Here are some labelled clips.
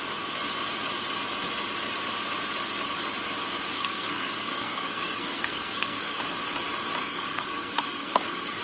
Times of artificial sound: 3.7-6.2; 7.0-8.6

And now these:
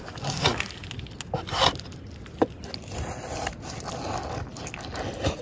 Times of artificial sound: none